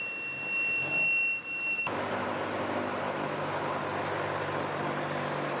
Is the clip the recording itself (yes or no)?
yes